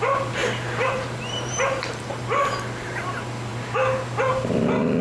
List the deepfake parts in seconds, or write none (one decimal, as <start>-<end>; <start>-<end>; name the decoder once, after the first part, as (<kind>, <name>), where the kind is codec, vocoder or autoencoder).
0.4-1.6 (vocoder, BigVGAN v2)